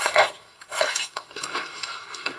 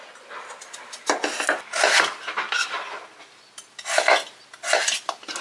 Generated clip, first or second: first